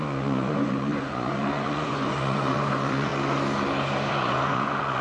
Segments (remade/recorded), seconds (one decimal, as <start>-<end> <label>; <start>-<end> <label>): 0.0-3.1 remade; 3.1-4.1 recorded; 4.1-5.0 remade